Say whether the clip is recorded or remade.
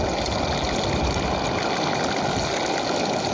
recorded